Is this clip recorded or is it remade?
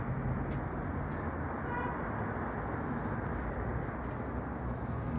recorded